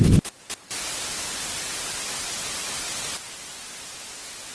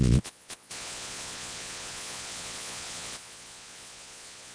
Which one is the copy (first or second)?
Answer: second